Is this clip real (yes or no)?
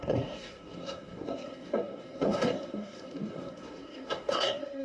no